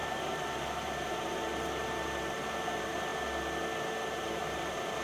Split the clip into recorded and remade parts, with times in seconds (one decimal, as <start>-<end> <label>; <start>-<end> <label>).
0.0-3.1 remade; 3.1-4.1 recorded; 4.1-5.0 remade